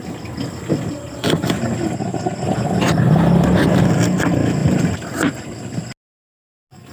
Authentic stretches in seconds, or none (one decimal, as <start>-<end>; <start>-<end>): 0.0-6.9